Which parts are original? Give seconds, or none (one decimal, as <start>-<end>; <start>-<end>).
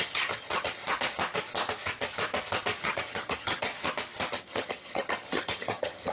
0.8-2.8; 3.7-4.4